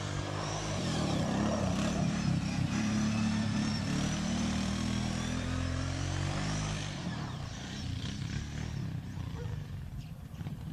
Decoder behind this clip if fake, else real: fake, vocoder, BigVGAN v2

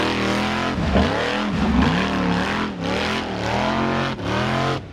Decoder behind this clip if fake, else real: real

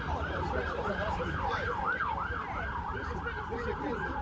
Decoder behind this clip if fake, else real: fake, vocoder, BigVGAN v2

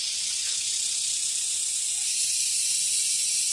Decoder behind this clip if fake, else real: real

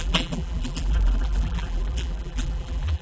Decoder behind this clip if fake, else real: fake, vocoder, BigVGAN v2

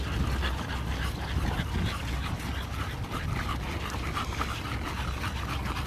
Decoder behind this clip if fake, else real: real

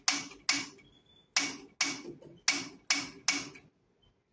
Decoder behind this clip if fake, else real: real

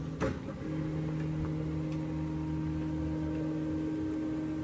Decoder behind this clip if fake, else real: real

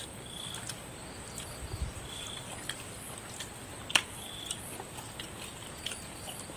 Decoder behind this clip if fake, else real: real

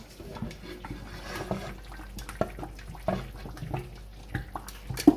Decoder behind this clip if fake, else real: real